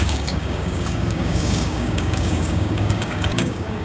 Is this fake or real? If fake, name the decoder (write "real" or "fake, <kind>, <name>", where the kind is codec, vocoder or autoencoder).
fake, codec, DAC